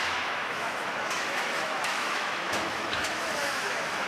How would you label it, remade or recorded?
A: remade